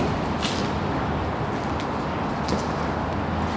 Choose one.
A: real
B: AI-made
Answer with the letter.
A